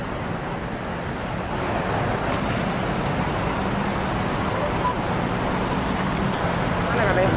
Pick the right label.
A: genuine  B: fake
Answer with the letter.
A